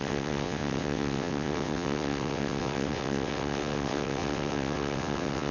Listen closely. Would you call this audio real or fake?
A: fake